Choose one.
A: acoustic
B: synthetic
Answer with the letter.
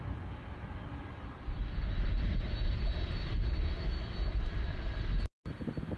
A